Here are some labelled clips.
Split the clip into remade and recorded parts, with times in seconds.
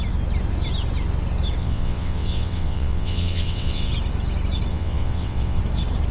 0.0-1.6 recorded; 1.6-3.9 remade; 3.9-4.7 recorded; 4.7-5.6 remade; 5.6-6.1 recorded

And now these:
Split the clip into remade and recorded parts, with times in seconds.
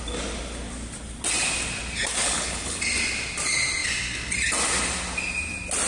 0.0-2.2 recorded; 2.2-2.8 remade; 2.8-5.9 recorded